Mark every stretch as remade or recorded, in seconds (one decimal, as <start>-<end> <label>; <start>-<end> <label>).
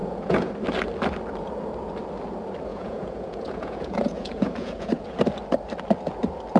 0.0-0.5 remade; 0.5-2.7 recorded; 2.7-5.2 remade; 5.2-6.6 recorded